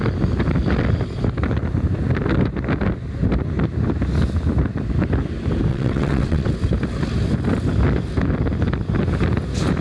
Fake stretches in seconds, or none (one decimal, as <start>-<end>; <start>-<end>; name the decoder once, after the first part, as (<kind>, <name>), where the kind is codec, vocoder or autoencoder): 5.7-6.5 (vocoder, WaveNeXt)